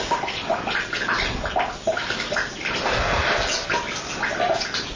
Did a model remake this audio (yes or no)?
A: no